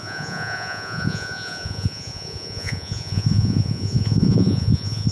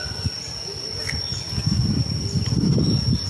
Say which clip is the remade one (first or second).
first